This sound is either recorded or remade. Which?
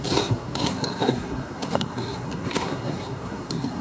remade